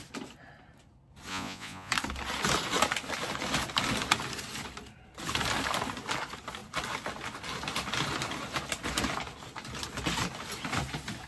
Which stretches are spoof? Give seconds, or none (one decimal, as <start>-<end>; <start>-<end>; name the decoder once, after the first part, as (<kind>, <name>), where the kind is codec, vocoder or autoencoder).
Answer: 1.3-1.9 (vocoder, Vocos)